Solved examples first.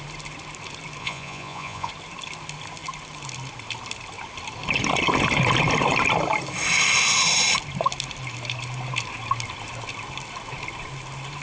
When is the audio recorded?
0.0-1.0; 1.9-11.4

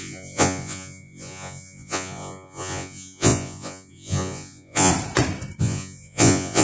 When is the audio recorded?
4.9-5.6

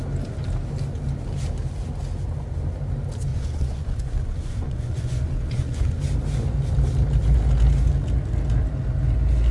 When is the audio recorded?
0.0-3.3; 6.0-9.5

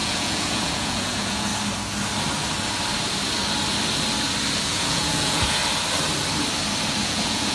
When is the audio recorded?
1.5-4.6; 5.6-7.0